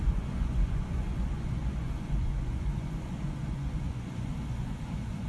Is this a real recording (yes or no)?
no